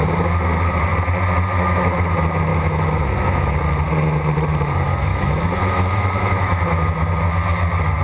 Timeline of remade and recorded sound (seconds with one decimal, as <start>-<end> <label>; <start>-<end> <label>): 0.0-2.5 recorded; 2.5-3.6 remade; 3.6-5.1 recorded; 5.1-6.6 remade; 6.6-8.0 recorded